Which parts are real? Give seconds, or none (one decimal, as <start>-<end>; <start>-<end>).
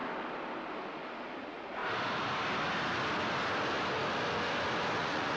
0.0-1.3; 1.8-5.0